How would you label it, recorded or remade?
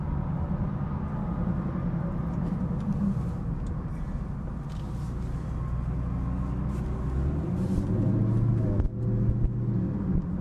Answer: recorded